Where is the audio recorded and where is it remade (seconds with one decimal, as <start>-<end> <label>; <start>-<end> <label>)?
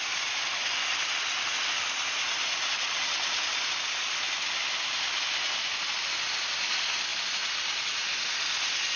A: 0.0-9.0 recorded